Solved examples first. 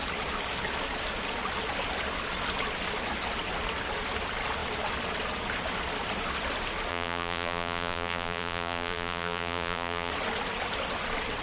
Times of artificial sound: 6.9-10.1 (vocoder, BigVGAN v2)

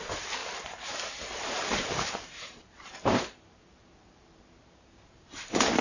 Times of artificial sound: 0.0-5.8 (vocoder, BigVGAN v2)

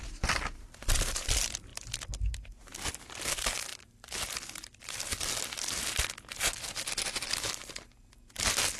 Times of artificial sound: 3.7-4.8 (vocoder, BigVGAN v2)

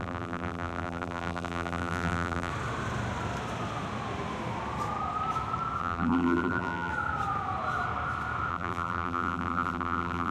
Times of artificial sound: 0.0-2.5 (vocoder, BigVGAN v2); 5.8-6.9; 8.5-10.3

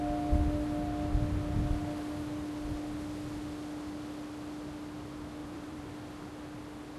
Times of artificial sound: 5.4-5.9 (vocoder, BigVGAN v2)

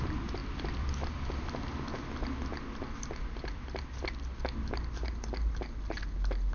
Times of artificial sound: 0.4-1.3 (vocoder, BigVGAN v2); 2.5-3.8

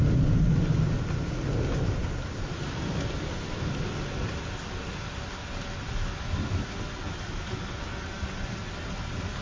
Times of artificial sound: 2.0-5.9 (vocoder, BigVGAN v2)

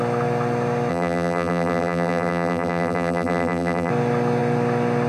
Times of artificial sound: 0.9-3.9 (vocoder, BigVGAN v2)